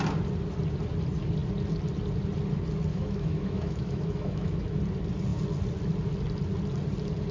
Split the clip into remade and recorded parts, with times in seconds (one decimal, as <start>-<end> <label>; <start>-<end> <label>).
0.0-2.9 recorded; 2.9-4.8 remade; 4.8-7.3 recorded